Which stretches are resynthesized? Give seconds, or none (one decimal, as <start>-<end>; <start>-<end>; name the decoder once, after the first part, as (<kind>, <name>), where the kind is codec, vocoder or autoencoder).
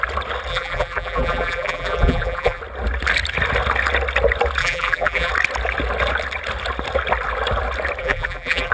0.5-2.6 (vocoder, BigVGAN v2); 4.6-5.3; 8.0-8.7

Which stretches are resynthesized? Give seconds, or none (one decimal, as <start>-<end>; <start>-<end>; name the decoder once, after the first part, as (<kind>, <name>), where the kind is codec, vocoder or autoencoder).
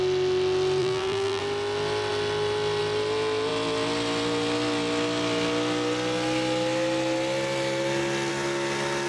0.8-1.4 (vocoder, BigVGAN v2)